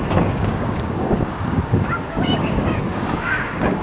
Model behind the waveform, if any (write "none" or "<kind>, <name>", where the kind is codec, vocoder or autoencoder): codec, DAC